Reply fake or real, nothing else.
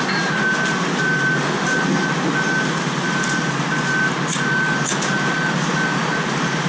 real